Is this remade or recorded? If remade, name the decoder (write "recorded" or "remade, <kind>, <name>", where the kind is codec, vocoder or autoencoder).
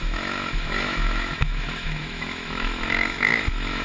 remade, autoencoder, DAC-VAE